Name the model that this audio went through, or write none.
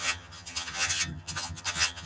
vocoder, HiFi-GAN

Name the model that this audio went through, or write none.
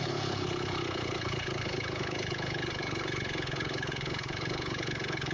codec, HILCodec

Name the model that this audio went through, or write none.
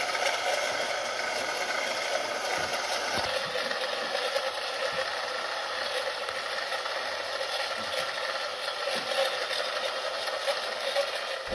none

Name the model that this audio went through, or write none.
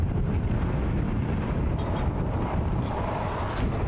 none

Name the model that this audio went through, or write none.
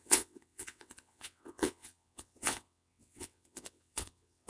vocoder, WaveNeXt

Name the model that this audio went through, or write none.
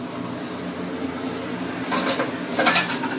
none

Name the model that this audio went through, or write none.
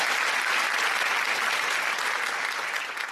none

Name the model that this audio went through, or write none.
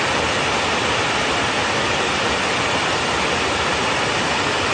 none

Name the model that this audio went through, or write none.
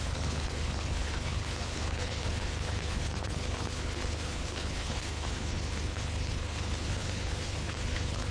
codec, HILCodec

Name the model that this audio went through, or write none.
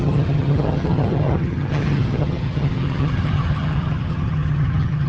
vocoder, HiFi-GAN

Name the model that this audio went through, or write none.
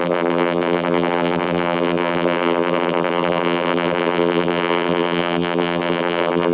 vocoder, BigVGAN v2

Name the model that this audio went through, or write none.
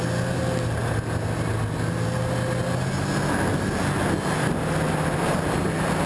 none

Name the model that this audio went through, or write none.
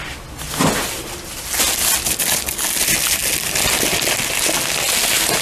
none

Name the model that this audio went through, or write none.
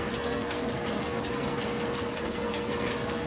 codec, SNAC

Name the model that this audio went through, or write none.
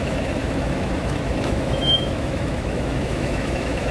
autoencoder, DAC-VAE